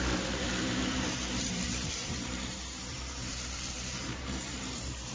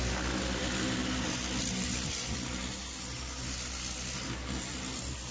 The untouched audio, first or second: second